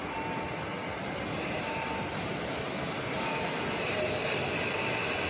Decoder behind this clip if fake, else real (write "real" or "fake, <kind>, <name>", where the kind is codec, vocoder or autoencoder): real